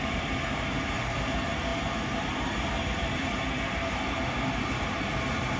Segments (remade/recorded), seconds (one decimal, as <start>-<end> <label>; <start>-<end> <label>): 0.0-5.6 remade